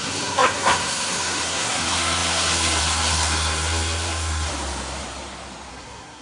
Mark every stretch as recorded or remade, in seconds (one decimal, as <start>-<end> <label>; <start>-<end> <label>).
0.0-4.5 remade; 4.5-5.7 recorded; 5.7-6.2 remade